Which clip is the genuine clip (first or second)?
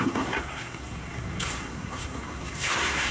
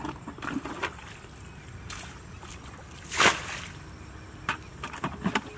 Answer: second